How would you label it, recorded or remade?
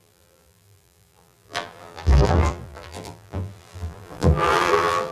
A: remade